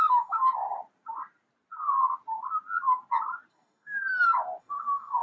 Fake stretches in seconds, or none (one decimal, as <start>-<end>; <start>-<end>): 0.0-0.4; 3.5-4.0; 4.6-5.2